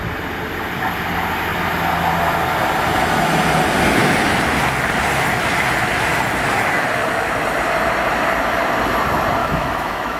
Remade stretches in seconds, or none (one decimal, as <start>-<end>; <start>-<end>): 9.4-10.2